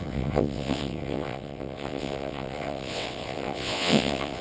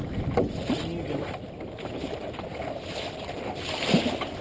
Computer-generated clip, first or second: first